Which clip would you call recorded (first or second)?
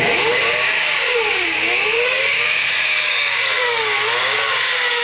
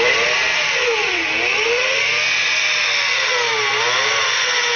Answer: second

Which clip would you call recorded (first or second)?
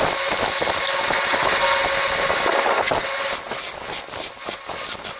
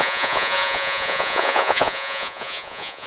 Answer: first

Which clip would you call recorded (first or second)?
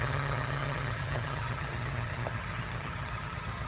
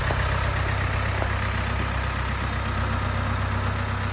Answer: second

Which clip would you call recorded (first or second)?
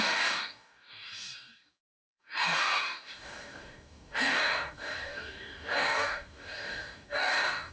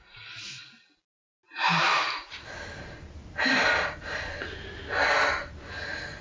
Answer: second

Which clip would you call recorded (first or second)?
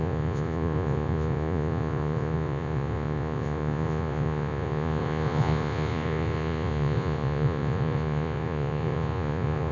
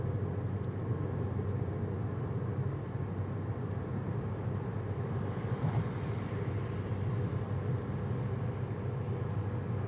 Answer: second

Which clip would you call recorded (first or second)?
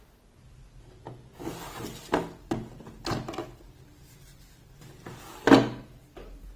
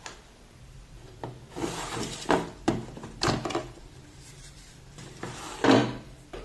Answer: first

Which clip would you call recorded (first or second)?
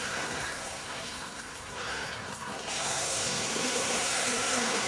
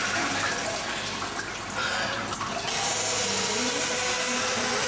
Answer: second